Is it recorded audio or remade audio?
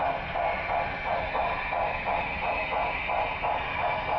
recorded